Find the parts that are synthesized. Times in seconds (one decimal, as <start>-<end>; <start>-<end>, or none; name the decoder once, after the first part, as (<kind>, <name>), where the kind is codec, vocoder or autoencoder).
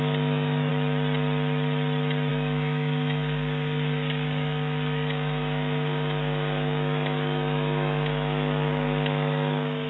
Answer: 0.0-0.7 (codec, DAC); 2.3-9.9